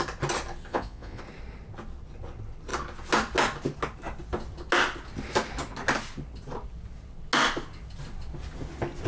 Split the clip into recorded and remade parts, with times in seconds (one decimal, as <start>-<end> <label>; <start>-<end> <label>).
0.0-0.7 recorded; 0.7-1.2 remade; 1.2-9.1 recorded